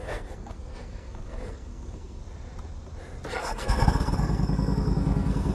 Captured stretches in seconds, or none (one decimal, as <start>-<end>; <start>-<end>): 2.2-3.3